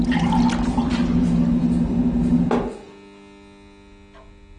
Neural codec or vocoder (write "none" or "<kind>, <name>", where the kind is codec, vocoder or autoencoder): none